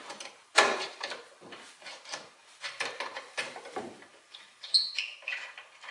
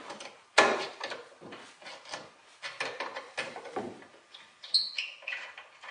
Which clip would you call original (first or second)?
second